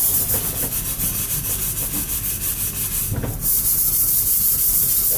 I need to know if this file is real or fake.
real